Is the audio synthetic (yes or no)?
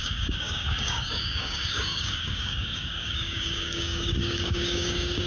yes